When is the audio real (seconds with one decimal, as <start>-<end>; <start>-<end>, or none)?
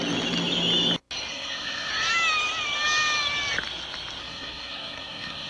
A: 0.0-1.3; 1.9-4.2